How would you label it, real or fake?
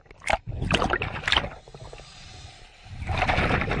real